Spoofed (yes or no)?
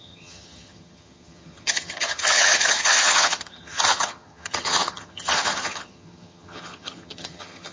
yes